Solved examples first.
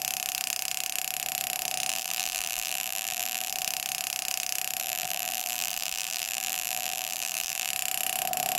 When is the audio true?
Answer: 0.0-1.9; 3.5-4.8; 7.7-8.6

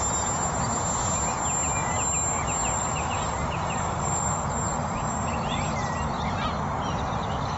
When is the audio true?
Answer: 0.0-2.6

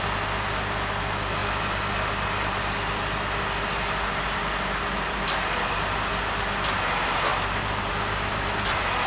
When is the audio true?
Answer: 0.0-7.3; 7.9-9.1

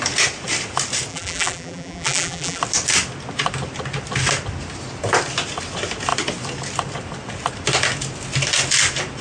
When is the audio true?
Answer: 0.0-1.1; 2.6-9.2